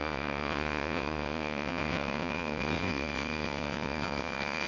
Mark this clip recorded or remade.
remade